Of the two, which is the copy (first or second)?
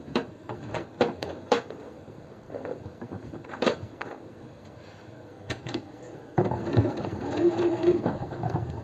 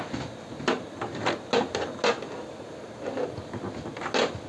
first